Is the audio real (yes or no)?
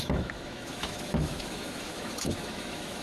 no